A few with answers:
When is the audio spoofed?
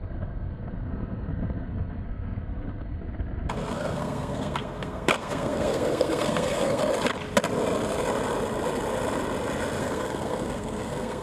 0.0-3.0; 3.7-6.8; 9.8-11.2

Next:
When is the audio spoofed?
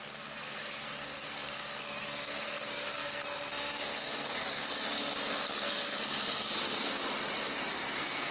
0.0-7.0; 7.7-8.3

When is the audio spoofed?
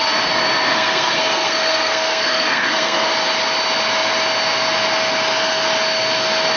0.7-3.1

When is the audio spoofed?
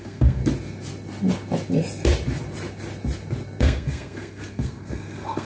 0.0-0.4; 3.6-5.4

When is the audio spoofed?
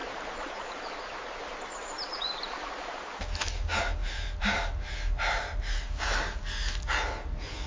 none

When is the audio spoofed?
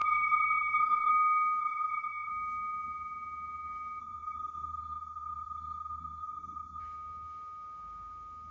0.0-1.1; 1.6-2.3; 4.0-6.8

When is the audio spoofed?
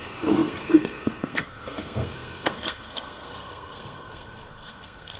0.0-5.2